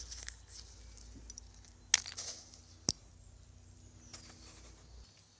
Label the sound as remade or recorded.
recorded